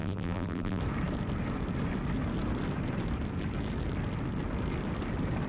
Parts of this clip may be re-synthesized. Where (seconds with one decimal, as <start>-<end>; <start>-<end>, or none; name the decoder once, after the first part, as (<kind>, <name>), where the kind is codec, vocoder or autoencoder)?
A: 0.0-0.8 (vocoder, BigVGAN v2)

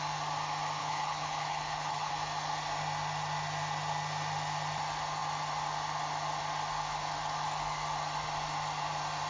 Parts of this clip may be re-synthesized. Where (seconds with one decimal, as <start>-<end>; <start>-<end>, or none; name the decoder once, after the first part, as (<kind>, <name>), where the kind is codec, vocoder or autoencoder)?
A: 0.8-2.1 (codec, HILCodec)

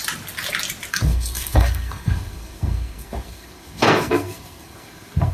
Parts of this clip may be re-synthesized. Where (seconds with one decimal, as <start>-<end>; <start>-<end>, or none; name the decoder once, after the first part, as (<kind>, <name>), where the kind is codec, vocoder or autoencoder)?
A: 0.9-5.3 (codec, SNAC)

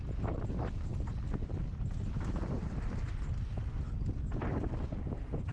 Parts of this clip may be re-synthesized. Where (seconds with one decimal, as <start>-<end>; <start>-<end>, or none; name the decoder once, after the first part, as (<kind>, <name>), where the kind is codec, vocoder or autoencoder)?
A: none

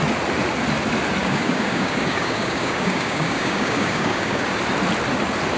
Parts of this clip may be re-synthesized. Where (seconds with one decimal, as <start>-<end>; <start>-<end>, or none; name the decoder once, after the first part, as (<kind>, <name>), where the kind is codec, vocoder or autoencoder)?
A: 1.2-4.4 (codec, DAC)

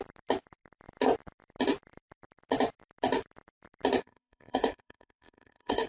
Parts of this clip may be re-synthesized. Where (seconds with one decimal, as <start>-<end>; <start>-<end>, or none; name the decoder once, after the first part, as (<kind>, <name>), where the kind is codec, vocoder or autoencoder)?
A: 4.0-5.9 (codec, SNAC)